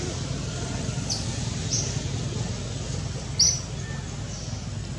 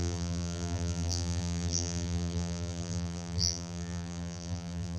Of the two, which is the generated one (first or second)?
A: second